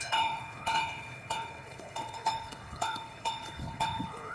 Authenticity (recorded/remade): remade